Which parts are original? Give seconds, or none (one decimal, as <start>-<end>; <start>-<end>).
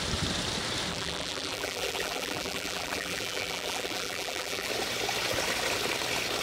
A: 0.0-0.9; 4.7-6.4